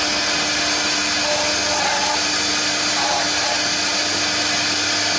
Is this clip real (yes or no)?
yes